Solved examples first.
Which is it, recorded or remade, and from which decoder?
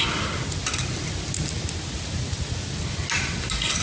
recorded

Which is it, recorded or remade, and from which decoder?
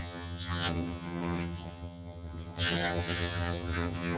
remade, vocoder, HiFi-GAN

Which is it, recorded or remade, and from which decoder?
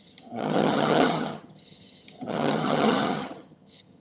remade, vocoder, HiFi-GAN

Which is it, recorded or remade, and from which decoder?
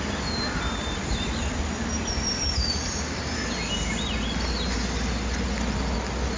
recorded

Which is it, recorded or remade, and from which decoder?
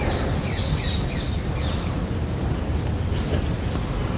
recorded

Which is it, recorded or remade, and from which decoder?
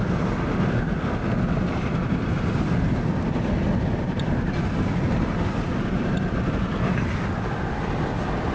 recorded